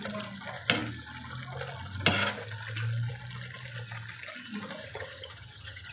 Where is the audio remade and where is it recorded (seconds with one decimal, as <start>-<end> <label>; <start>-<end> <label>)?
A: 0.0-4.8 recorded; 4.8-5.9 remade